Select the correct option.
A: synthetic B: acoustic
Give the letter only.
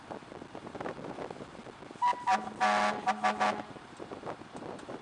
B